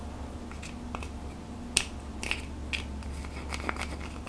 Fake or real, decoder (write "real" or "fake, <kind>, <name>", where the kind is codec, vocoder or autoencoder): real